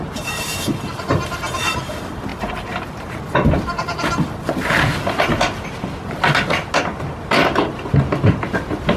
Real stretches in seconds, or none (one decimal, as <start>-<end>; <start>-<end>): 0.0-9.0